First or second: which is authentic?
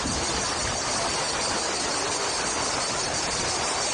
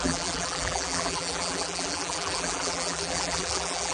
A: first